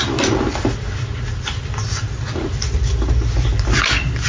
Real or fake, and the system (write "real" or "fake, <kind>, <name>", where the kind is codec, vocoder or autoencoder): real